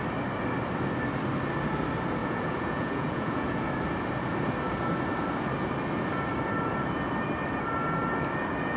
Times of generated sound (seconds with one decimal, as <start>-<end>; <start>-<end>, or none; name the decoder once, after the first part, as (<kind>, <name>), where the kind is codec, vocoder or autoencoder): 2.2-3.7 (vocoder, Vocos)